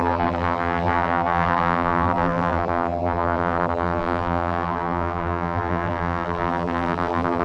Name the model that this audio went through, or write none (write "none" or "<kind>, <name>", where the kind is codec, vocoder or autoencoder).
vocoder, BigVGAN v2